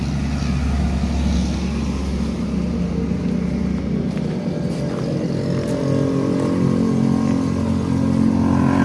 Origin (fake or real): real